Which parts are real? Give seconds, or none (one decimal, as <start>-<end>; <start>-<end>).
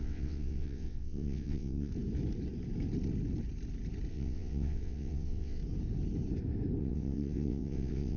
1.9-4.1; 5.6-6.8